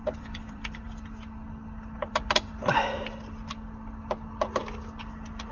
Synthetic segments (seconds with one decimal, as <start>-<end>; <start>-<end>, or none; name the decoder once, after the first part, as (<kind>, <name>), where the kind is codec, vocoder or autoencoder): 0.0-1.0 (vocoder, BigVGAN v2); 2.0-2.8

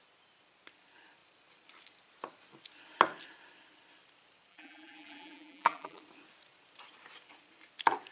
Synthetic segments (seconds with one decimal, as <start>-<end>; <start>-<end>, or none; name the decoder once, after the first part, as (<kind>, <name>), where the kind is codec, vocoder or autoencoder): 4.5-6.0 (vocoder, BigVGAN v2)